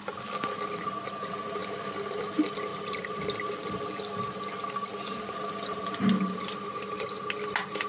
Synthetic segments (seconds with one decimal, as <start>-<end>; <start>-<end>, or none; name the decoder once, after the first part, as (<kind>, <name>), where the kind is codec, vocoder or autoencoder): 2.7-3.9 (vocoder, BigVGAN v2)